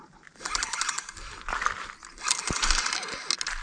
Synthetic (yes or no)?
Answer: no